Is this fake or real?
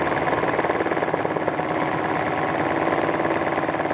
real